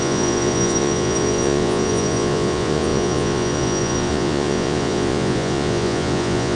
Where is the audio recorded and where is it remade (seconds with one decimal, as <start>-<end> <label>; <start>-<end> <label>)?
0.0-6.6 remade